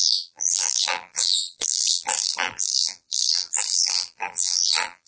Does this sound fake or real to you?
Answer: fake